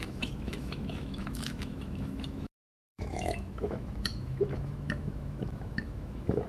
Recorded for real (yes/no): no